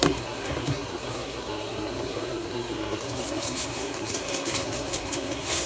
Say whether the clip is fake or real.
fake